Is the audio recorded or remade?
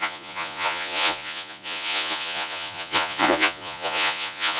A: remade